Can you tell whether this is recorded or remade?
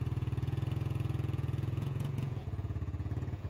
remade